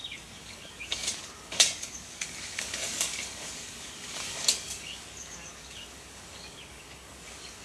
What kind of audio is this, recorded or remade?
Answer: remade